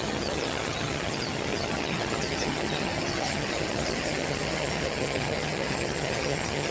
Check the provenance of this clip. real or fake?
fake